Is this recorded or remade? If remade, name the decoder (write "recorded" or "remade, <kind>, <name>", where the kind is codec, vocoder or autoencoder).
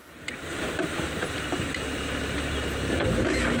remade, vocoder, BigVGAN v2